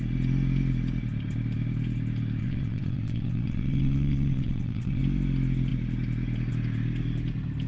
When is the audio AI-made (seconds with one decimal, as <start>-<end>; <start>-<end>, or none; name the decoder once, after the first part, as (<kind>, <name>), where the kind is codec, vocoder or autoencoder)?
2.4-5.0 (vocoder, WaveNeXt)